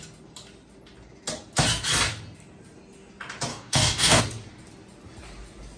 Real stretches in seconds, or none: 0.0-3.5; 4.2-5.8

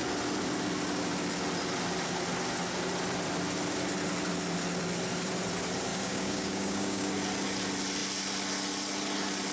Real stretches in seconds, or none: 0.0-5.9; 7.1-9.5

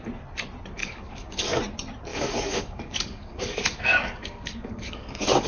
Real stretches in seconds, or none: 0.0-0.8; 1.6-2.1